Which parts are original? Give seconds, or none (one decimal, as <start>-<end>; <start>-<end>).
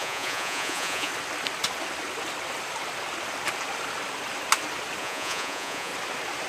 1.1-5.0; 5.9-6.5